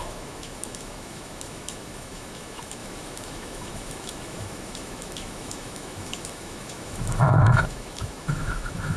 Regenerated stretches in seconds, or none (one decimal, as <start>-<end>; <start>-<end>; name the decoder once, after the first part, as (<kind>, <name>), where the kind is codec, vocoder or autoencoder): 0.0-9.0 (autoencoder, DAC-VAE)